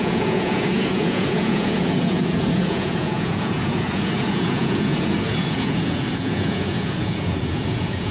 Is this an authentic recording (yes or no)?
no